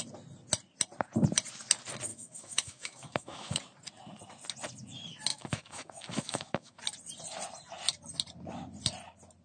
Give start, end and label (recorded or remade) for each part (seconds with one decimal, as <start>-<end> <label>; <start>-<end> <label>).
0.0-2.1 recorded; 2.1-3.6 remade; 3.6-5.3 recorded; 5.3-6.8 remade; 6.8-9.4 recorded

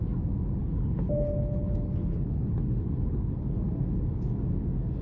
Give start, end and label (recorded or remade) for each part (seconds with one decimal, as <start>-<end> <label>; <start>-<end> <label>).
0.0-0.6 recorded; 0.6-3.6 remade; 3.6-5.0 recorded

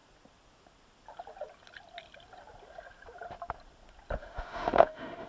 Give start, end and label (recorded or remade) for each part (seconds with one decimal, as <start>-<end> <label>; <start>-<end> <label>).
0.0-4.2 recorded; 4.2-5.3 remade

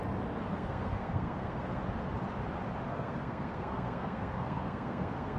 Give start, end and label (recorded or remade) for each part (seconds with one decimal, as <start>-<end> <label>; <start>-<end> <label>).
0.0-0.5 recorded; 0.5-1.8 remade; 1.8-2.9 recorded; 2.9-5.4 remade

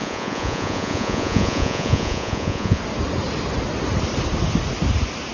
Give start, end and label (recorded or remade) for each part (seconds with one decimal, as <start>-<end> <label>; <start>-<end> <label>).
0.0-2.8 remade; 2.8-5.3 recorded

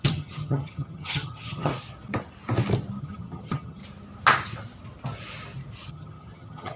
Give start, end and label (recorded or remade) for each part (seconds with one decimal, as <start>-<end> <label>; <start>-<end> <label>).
0.0-1.7 remade; 1.7-3.0 recorded; 3.0-3.8 remade; 3.8-5.9 recorded; 5.9-6.8 remade

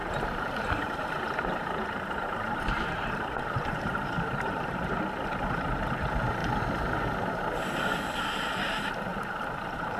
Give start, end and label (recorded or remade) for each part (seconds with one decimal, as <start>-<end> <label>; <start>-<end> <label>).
0.0-5.0 remade; 5.0-9.1 recorded; 9.1-10.0 remade